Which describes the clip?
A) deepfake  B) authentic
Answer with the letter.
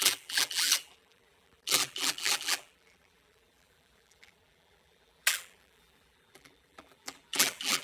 A